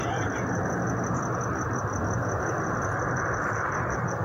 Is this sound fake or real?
real